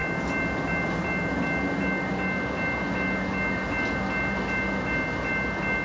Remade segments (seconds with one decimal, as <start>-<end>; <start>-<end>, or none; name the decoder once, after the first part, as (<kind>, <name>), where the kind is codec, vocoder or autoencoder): none